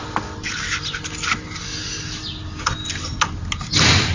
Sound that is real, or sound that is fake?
real